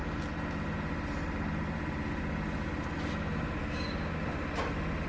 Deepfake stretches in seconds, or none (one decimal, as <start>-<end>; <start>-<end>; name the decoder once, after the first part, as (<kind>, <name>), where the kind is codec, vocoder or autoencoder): 3.6-4.2 (codec, DAC)